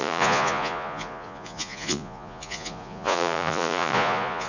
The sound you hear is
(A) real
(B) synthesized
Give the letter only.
B